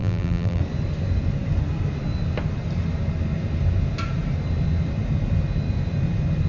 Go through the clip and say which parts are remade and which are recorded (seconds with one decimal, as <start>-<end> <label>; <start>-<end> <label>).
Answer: 0.0-0.6 remade; 0.6-6.5 recorded